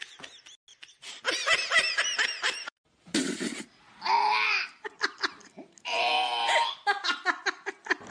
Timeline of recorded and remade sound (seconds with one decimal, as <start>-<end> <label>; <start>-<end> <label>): 0.0-0.7 recorded; 0.7-3.6 remade; 3.6-4.3 recorded; 4.3-5.0 remade; 5.0-8.1 recorded

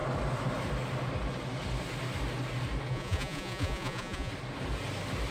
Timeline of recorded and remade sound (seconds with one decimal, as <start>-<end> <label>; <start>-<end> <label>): 0.0-2.9 recorded; 2.9-4.3 remade; 4.3-5.3 recorded

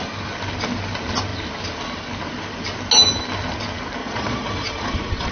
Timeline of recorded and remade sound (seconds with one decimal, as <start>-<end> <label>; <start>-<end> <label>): 0.0-4.0 recorded; 4.0-5.3 remade

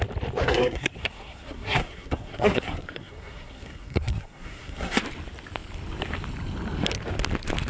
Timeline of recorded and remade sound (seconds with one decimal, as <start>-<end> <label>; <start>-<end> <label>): 0.0-0.4 recorded; 0.4-5.0 remade; 5.0-7.7 recorded

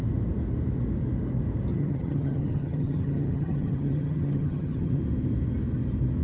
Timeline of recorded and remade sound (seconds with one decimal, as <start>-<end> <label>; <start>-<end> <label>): 0.0-1.7 recorded; 1.7-5.0 remade; 5.0-6.2 recorded

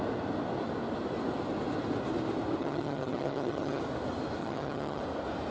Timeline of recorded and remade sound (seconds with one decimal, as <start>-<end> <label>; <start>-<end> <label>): 0.0-2.6 recorded; 2.6-3.8 remade; 3.8-4.4 recorded; 4.4-5.0 remade; 5.0-5.5 recorded

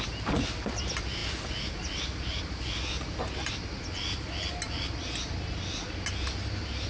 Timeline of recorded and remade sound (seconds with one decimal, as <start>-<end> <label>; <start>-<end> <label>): 0.0-6.9 recorded

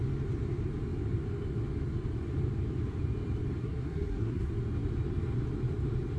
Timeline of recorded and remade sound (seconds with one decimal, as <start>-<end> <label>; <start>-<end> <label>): 0.0-3.6 recorded; 3.6-4.5 remade; 4.5-6.2 recorded